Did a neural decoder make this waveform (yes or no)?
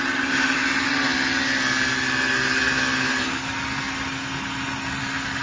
no